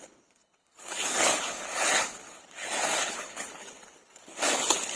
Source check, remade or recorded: remade